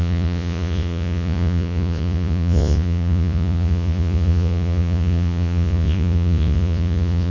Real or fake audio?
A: fake